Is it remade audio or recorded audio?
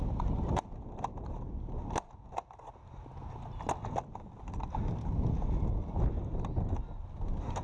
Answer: recorded